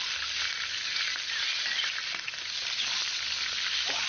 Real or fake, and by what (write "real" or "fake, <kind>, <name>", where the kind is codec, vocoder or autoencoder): real